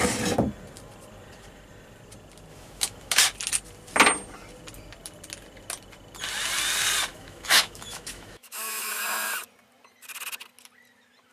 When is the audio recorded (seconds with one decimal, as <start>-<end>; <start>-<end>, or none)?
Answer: 0.0-2.5; 3.2-7.1; 9.4-11.3

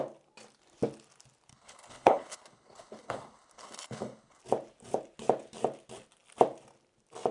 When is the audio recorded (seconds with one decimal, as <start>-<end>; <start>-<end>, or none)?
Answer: 0.0-1.5; 4.4-7.3

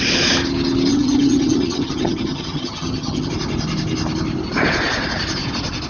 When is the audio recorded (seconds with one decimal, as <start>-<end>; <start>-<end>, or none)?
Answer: 0.0-0.9; 3.3-5.9

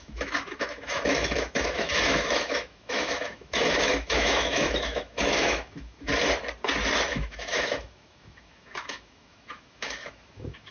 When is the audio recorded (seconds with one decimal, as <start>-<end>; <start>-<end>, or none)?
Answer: 6.1-7.1

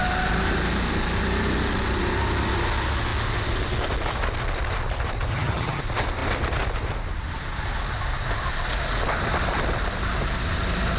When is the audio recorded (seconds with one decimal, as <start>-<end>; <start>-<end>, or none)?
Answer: 0.0-5.3; 5.8-11.0

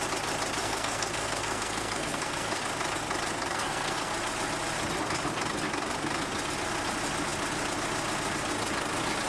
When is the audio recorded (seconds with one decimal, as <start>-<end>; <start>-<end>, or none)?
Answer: 0.0-0.6; 2.6-3.5; 4.1-9.3